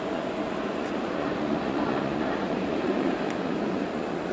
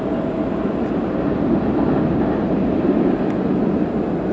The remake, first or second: first